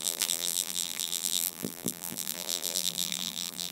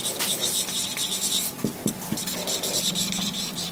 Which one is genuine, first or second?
second